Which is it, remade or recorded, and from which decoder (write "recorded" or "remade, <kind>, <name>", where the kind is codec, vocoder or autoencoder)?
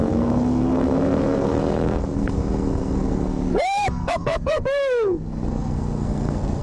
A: remade, codec, SNAC